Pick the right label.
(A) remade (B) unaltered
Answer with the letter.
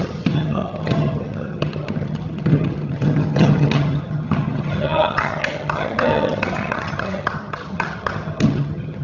A